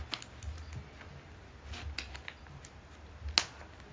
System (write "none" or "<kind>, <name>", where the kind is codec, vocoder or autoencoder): none